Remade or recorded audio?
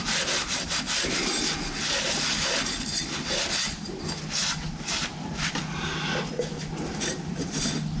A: recorded